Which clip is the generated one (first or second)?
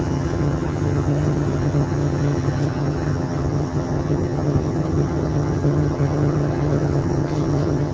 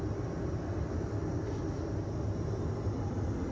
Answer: first